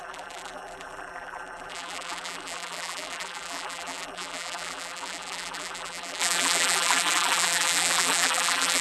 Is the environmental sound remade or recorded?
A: remade